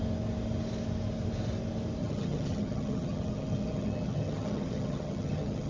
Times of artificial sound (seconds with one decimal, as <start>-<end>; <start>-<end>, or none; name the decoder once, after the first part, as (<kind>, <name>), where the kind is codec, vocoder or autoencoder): 2.0-5.7 (vocoder, HiFi-GAN)